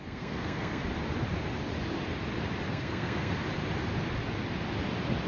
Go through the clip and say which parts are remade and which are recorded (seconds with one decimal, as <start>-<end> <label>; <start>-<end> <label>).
0.0-0.8 remade; 0.8-2.7 recorded; 2.7-3.3 remade; 3.3-5.3 recorded